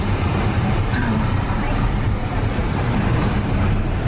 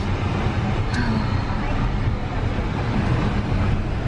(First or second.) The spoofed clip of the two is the first